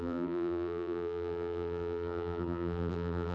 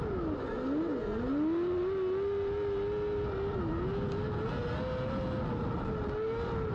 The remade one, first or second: first